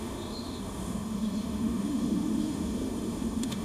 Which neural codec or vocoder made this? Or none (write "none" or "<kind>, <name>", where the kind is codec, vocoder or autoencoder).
autoencoder, DAC-VAE